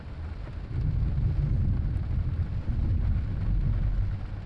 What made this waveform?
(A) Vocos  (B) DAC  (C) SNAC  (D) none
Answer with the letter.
D